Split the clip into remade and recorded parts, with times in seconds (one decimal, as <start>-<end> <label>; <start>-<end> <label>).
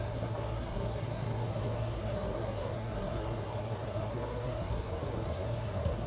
0.0-6.1 remade